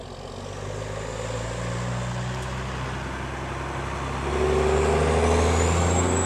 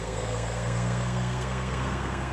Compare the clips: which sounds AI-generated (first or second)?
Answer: second